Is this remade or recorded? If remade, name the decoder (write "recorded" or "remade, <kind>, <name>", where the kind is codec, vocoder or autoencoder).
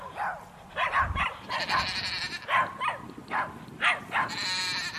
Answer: recorded